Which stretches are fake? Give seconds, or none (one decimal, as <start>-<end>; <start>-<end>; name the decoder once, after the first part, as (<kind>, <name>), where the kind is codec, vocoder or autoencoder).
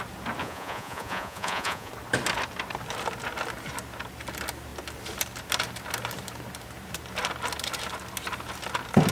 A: 0.4-1.9 (vocoder, Vocos)